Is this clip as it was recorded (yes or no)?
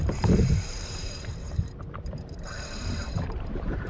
no